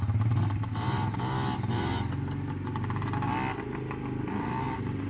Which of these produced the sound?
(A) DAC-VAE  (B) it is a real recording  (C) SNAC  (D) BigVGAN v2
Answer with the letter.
B